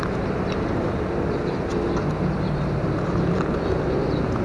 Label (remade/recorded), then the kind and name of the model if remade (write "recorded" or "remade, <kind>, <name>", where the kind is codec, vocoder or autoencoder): recorded